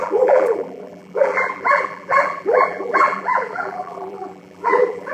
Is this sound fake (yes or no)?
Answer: yes